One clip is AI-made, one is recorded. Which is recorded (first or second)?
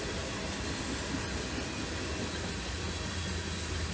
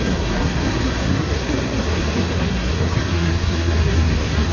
first